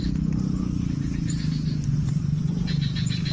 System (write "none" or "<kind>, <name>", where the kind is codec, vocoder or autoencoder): none